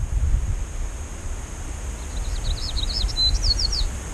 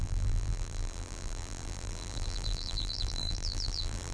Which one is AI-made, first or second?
second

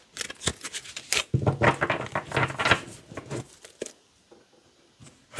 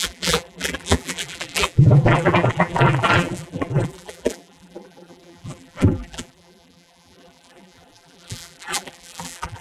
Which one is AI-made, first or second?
second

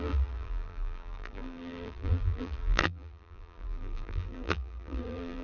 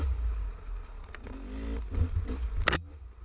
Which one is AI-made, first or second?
first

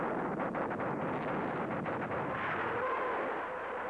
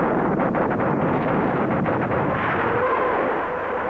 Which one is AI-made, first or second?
second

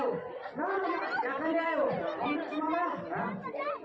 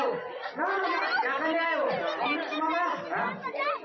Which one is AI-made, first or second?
first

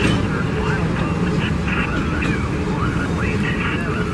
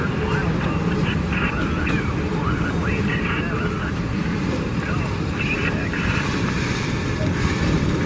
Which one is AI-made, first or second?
second